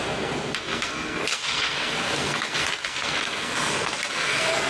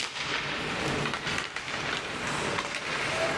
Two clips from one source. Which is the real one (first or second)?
second